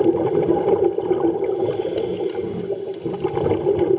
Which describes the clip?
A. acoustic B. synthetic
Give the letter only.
A